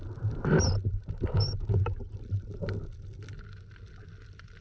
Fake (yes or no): no